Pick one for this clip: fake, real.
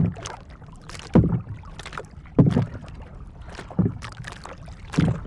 real